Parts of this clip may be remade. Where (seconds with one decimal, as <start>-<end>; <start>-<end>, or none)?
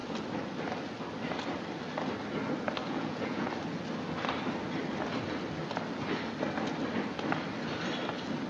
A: 2.8-3.5